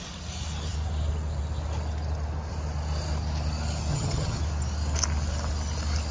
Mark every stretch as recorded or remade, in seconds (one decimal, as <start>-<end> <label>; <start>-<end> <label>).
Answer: 0.0-3.9 recorded; 3.9-4.4 remade; 4.4-6.1 recorded